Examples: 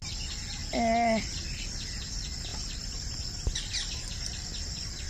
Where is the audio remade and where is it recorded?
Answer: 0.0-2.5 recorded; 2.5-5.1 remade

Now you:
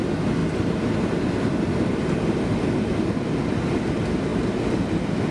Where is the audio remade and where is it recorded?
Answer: 0.0-0.4 recorded; 0.4-3.6 remade; 3.6-4.3 recorded; 4.3-5.3 remade